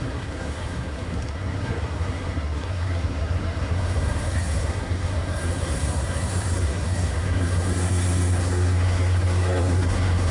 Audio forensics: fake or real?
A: fake